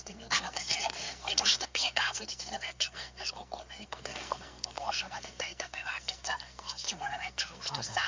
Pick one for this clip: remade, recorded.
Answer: remade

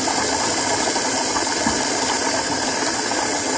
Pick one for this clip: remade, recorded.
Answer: recorded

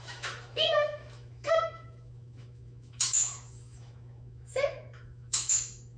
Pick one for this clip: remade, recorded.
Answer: remade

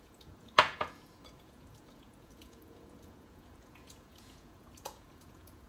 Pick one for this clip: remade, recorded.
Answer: remade